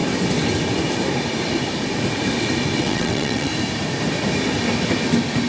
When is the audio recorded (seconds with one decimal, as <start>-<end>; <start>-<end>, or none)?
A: 0.0-2.8; 3.5-5.5